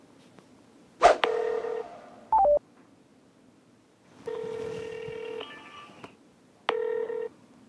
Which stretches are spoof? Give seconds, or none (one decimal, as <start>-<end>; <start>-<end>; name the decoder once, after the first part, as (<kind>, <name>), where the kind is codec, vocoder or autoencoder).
none